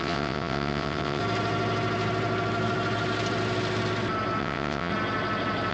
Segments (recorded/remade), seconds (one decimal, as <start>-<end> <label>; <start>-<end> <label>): 0.0-1.2 remade; 1.2-4.4 recorded; 4.4-4.9 remade; 4.9-5.7 recorded